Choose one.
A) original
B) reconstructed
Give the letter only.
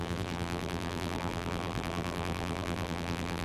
B